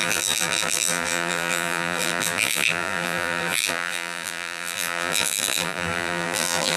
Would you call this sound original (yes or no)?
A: no